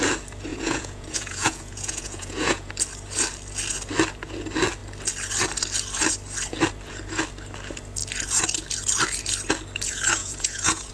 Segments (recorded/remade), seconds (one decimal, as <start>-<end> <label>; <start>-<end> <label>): 0.0-0.5 recorded; 0.5-2.7 remade; 2.7-10.2 recorded; 10.2-10.9 remade

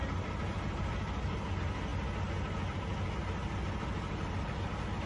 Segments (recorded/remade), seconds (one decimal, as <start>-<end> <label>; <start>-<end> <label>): 0.0-5.1 recorded

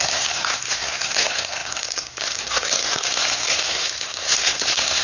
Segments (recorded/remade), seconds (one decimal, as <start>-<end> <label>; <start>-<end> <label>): 0.0-5.0 remade